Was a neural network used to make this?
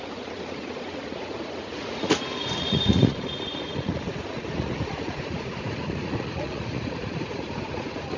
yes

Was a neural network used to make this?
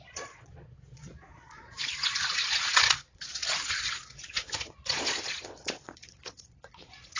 yes